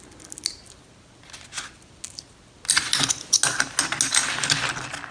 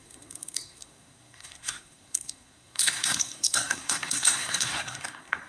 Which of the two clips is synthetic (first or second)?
second